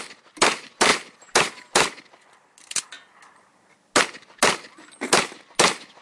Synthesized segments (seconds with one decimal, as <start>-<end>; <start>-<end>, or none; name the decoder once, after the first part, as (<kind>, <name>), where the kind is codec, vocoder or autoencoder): none